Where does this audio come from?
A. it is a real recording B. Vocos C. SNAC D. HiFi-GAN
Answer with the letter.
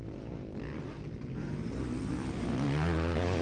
A